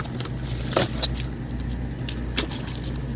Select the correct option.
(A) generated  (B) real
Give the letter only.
B